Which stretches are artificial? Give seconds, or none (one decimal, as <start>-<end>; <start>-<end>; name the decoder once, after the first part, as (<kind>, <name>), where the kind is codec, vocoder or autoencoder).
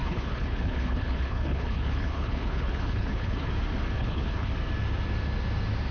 0.0-3.5 (codec, HILCodec); 4.0-4.5